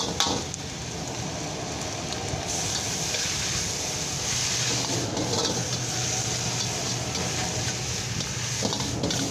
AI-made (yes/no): no